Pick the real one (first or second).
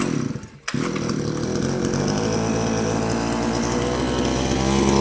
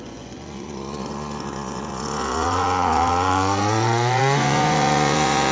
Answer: first